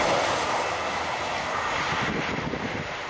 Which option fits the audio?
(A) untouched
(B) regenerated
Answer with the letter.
A